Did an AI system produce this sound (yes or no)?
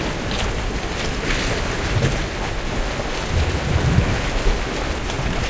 no